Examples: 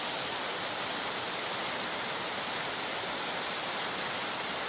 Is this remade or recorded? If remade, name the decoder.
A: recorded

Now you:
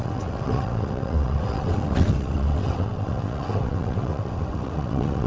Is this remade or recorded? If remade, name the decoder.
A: remade, vocoder, WaveNeXt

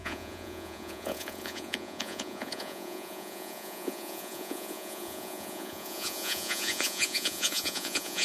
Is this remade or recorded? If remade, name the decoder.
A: remade, vocoder, Vocos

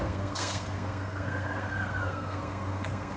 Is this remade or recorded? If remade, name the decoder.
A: remade, codec, SNAC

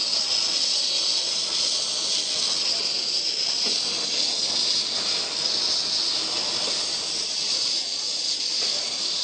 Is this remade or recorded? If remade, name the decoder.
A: recorded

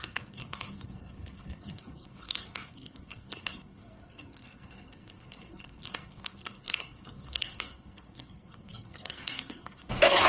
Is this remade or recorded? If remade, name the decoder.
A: remade, codec, SNAC